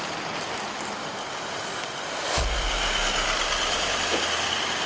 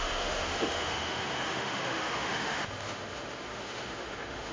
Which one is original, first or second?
first